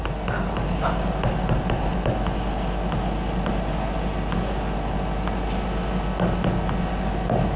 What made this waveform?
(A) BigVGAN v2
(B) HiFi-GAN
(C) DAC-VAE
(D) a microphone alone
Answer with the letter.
D